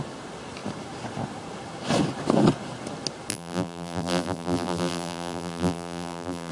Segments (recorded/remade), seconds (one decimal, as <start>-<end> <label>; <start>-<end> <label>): 0.0-3.3 recorded; 3.3-6.5 remade